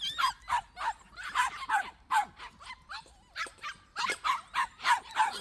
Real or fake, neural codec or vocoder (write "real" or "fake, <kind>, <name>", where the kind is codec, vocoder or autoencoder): real